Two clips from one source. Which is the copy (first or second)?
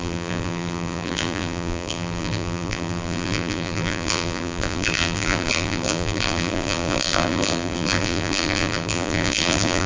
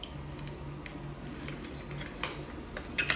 first